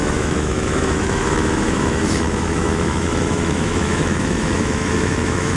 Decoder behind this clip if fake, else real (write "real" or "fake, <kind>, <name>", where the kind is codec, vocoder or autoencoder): fake, autoencoder, DAC-VAE